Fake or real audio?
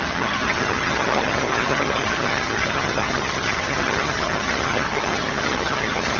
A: fake